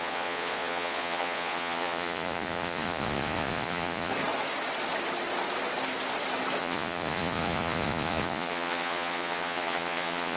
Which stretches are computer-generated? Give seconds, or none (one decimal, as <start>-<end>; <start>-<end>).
0.0-4.1; 6.6-10.4